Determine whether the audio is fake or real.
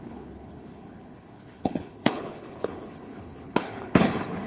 fake